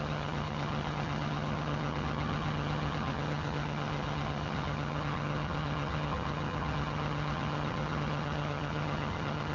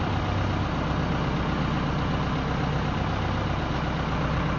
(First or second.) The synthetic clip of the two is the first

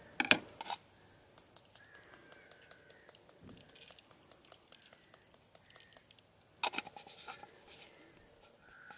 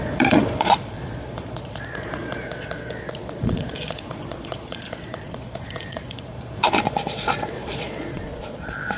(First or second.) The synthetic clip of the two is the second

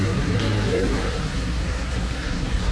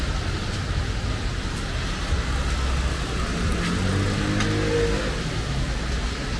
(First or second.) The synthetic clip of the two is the first